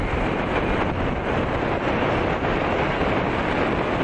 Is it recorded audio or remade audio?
recorded